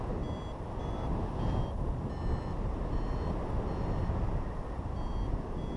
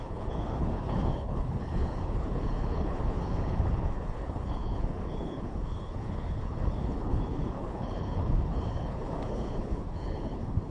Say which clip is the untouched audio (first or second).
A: first